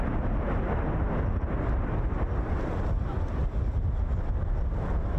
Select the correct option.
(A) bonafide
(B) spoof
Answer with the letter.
A